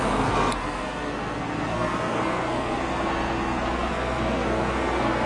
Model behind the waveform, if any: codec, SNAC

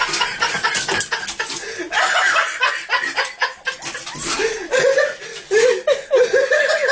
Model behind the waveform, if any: none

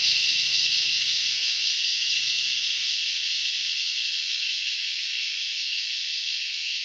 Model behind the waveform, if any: codec, SNAC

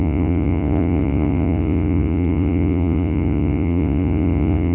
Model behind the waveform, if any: vocoder, Vocos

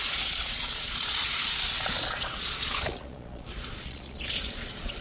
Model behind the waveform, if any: vocoder, Vocos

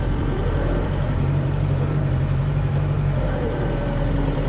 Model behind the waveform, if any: vocoder, BigVGAN v2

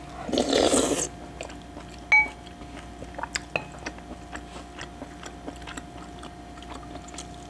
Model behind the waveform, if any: none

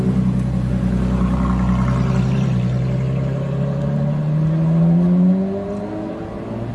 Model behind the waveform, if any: none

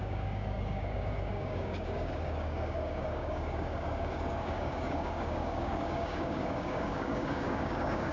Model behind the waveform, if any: codec, DAC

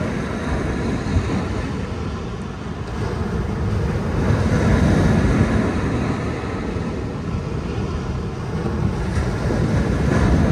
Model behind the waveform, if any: none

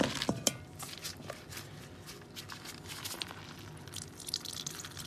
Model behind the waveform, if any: none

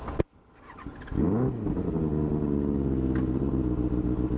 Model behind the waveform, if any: none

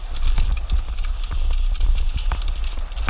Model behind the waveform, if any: none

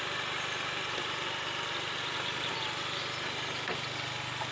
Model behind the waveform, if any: none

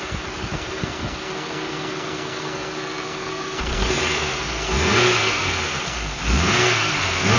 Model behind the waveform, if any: codec, SNAC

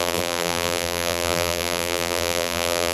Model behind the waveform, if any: vocoder, BigVGAN v2